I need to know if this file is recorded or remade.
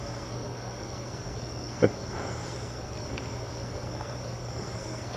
remade